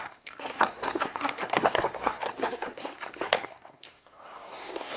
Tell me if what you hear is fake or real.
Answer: fake